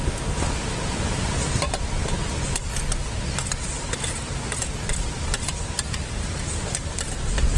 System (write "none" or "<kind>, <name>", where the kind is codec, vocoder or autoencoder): none